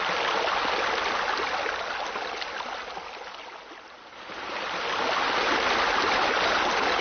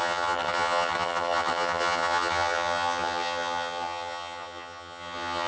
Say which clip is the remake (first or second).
second